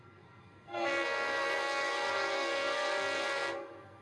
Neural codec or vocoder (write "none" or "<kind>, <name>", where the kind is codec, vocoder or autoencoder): codec, SNAC